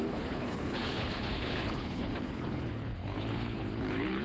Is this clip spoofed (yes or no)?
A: yes